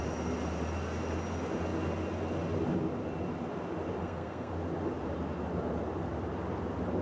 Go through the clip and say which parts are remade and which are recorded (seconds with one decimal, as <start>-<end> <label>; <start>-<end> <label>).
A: 0.0-4.0 recorded; 4.0-4.5 remade; 4.5-7.0 recorded